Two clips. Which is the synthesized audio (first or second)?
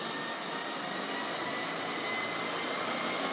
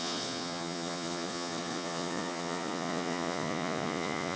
second